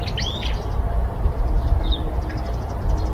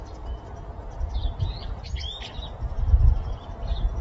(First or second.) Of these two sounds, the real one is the second